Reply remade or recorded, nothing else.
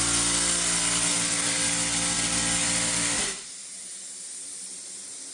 recorded